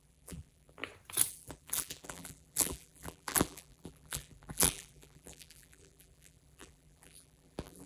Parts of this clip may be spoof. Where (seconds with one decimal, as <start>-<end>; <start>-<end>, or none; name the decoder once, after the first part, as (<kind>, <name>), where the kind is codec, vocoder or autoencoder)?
0.0-0.8 (vocoder, BigVGAN v2); 1.3-7.9